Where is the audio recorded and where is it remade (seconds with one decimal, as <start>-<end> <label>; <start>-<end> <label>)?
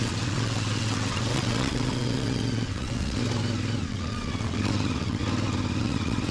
0.0-3.2 remade; 3.2-3.8 recorded; 3.8-5.2 remade; 5.2-5.8 recorded; 5.8-6.3 remade